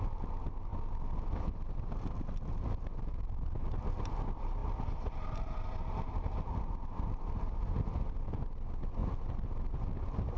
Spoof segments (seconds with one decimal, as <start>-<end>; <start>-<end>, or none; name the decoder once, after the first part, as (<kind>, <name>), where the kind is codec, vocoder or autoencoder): none